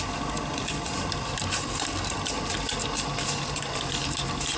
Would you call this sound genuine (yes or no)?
yes